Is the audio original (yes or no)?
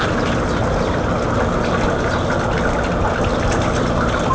yes